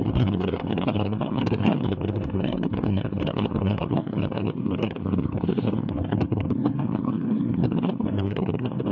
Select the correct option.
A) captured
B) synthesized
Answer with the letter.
B